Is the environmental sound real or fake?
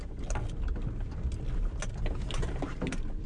real